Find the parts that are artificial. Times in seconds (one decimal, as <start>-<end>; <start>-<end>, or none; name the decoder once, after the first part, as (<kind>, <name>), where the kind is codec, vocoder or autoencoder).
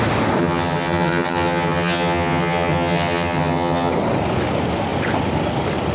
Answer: 0.4-3.9 (vocoder, HiFi-GAN)